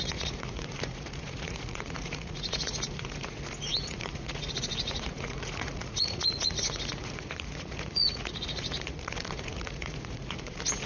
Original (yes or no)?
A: no